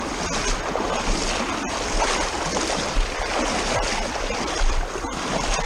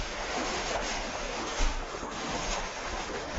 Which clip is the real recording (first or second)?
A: first